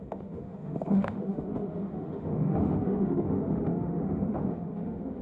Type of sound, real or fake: fake